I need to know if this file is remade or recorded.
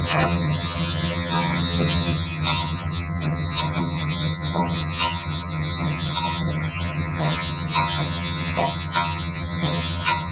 remade